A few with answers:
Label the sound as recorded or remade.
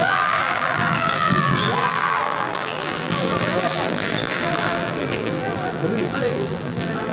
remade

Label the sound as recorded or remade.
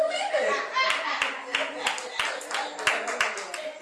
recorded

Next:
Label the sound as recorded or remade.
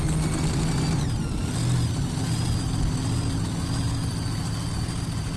recorded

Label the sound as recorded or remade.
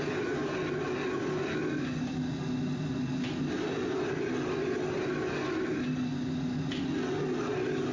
recorded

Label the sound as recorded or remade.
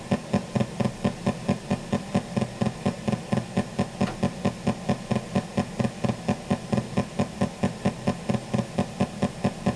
recorded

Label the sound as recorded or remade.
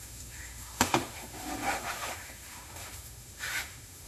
remade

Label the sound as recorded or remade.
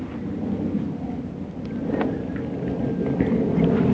remade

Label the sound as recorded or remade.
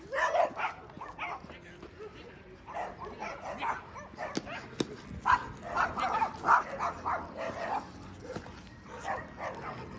recorded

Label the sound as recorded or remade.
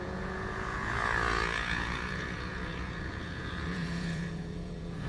remade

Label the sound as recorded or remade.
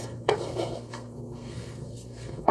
remade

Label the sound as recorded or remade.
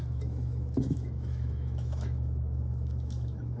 remade